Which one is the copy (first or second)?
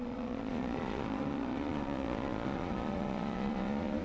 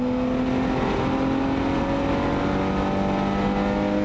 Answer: first